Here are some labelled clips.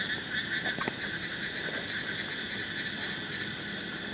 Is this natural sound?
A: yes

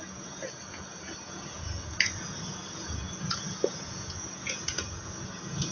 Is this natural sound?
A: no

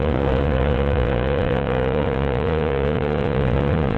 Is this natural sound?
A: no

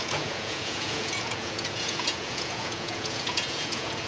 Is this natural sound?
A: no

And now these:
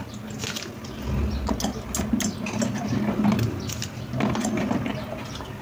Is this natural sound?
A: yes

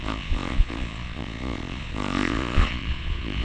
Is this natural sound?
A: no